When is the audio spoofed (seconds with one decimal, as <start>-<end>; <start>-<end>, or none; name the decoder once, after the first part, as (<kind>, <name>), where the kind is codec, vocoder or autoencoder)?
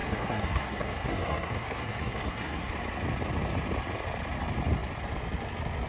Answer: 0.0-2.7 (codec, SNAC)